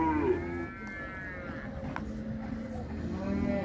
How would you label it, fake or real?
real